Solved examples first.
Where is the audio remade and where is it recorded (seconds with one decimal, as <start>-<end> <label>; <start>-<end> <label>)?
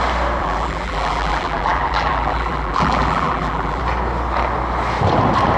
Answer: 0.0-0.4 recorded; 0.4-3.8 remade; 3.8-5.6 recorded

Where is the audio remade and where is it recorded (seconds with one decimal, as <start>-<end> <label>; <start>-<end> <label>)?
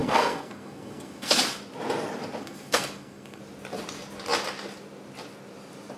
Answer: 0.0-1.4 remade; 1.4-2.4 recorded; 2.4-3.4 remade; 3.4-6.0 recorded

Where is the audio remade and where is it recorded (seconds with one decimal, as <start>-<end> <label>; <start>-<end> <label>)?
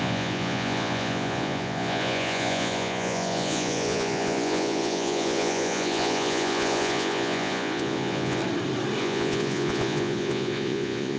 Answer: 0.0-8.4 remade; 8.4-9.0 recorded; 9.0-11.2 remade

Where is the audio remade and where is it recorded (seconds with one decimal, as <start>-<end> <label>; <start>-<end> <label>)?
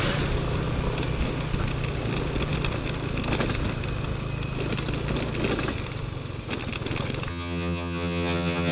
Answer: 0.0-7.3 recorded; 7.3-8.7 remade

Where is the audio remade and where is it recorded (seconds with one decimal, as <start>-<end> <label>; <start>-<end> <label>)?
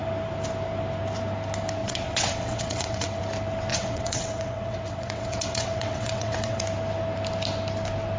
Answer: 0.0-1.8 recorded; 1.8-3.2 remade; 3.2-3.7 recorded; 3.7-6.6 remade; 6.6-8.2 recorded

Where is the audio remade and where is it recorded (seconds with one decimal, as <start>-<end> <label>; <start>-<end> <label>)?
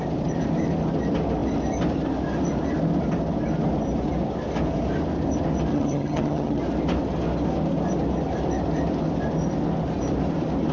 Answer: 0.0-5.7 recorded; 5.7-6.6 remade; 6.6-10.7 recorded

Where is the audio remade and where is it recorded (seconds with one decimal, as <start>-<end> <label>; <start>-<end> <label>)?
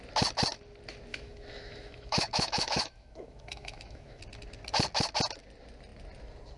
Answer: 0.0-1.1 recorded; 1.1-4.2 remade; 4.2-6.6 recorded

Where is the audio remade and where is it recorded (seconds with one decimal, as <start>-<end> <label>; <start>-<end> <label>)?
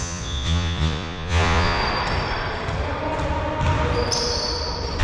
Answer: 0.0-1.8 remade; 1.8-5.0 recorded